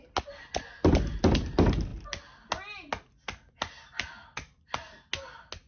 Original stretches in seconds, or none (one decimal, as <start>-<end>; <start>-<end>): 0.0-5.7